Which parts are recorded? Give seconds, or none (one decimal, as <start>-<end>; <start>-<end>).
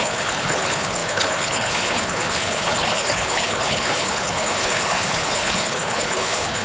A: none